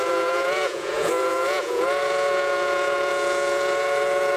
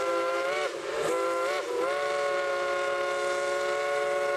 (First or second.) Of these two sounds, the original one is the second